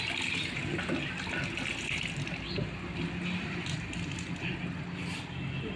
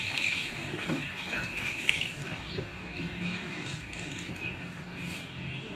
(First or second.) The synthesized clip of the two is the second